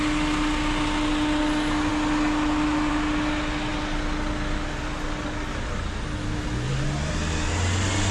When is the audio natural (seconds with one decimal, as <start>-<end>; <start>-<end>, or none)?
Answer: 0.0-8.1